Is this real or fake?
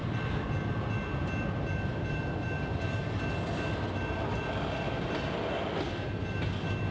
real